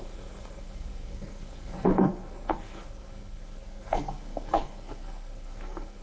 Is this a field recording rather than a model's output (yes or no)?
no